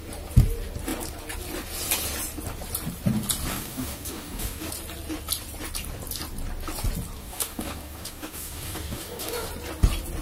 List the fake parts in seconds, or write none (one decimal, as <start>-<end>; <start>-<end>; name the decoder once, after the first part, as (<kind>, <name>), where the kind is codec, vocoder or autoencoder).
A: 3.5-4.7 (codec, DAC); 7.2-9.5